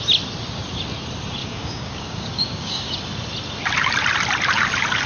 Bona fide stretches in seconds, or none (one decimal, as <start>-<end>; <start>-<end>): 0.0-1.4; 3.0-5.1